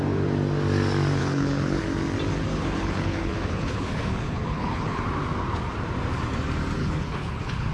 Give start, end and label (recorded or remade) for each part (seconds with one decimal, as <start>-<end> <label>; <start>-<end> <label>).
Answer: 0.0-1.2 recorded; 1.2-1.8 remade; 1.8-2.5 recorded; 2.5-5.0 remade; 5.0-6.8 recorded; 6.8-7.7 remade